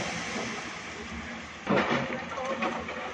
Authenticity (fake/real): real